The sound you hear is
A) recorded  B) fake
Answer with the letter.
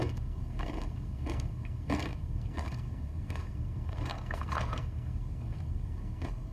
B